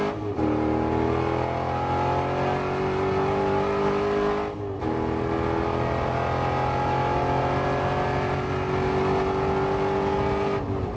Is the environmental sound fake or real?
real